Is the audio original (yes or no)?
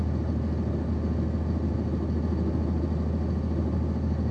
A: yes